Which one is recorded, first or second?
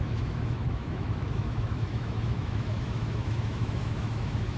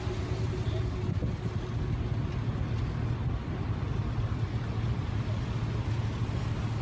second